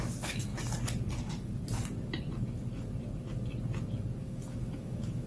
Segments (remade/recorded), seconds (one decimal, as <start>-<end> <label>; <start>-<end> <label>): 0.0-0.5 remade; 0.5-1.2 recorded; 1.2-1.6 remade; 1.6-4.2 recorded; 4.2-5.3 remade